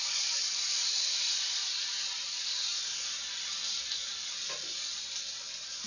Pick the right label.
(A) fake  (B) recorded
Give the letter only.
B